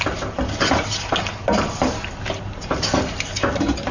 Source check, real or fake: real